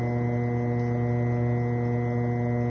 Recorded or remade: recorded